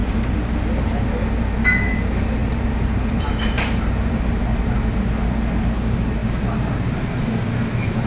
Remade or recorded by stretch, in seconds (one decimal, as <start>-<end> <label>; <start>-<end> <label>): 0.0-2.4 recorded; 2.4-4.2 remade; 4.2-8.1 recorded